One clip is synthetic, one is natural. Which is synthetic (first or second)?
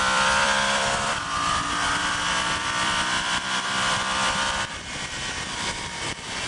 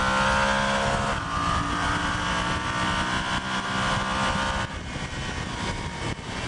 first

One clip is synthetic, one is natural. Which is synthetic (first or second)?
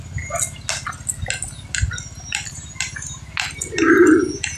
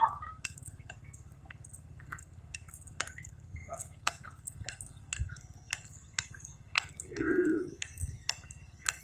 second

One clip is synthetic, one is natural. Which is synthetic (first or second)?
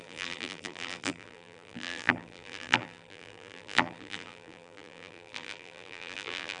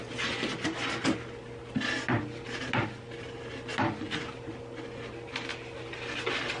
first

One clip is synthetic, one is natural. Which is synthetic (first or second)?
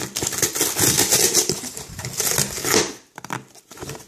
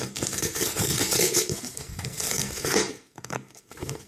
second